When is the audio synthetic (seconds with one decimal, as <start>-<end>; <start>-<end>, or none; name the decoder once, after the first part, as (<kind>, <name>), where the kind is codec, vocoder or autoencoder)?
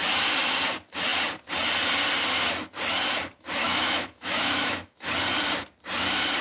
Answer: 3.6-5.1 (autoencoder, DAC-VAE)